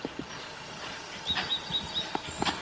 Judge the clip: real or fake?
real